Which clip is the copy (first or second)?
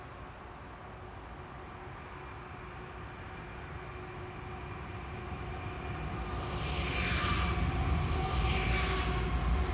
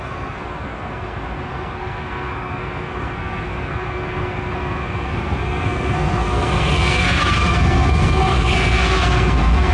second